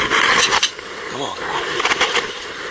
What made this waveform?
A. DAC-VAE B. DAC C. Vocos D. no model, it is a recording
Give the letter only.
D